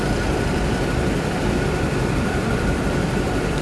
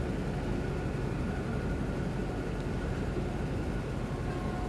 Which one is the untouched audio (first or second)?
second